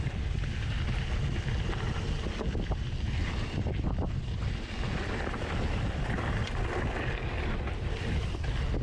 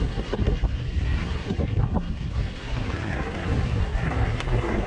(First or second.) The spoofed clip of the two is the second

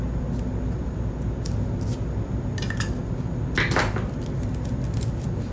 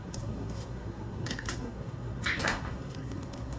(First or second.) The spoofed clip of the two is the second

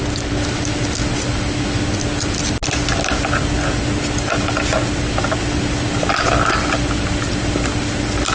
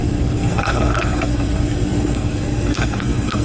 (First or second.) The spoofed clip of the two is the second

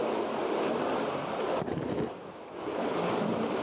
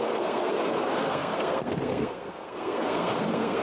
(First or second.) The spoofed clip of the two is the second